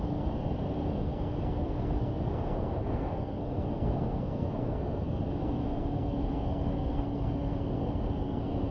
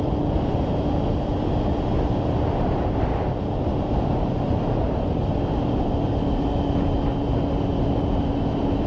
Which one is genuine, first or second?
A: second